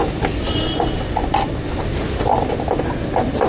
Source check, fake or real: real